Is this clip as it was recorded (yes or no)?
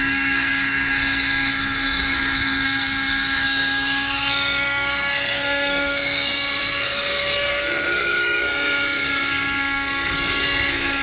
no